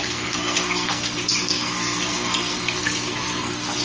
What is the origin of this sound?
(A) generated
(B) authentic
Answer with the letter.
A